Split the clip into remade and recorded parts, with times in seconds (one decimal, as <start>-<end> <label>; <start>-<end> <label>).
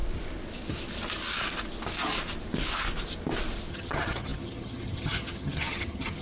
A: 0.0-3.7 recorded; 3.7-6.2 remade